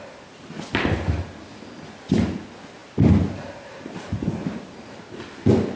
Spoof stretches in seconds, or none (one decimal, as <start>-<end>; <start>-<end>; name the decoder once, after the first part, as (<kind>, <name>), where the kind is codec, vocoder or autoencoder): 2.8-5.2 (vocoder, BigVGAN v2)